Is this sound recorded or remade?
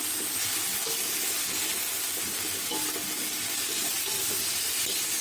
recorded